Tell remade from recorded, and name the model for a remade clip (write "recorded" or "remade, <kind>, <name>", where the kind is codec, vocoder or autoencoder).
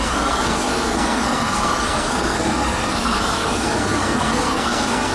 remade, codec, SNAC